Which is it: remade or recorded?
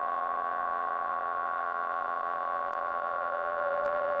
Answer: remade